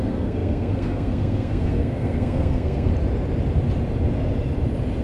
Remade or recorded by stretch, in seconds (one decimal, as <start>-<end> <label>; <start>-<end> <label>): 0.0-2.9 remade; 2.9-5.0 recorded